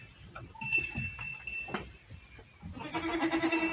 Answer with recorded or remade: recorded